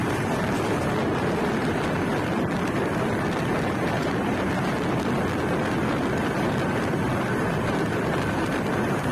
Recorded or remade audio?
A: recorded